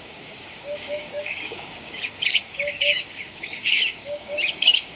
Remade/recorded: remade